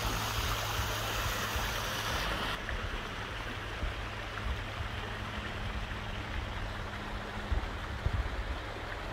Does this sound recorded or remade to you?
recorded